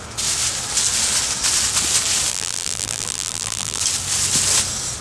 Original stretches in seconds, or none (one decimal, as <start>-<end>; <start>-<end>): 0.0-2.3; 3.8-5.0